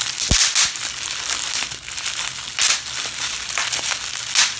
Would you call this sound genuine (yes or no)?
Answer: yes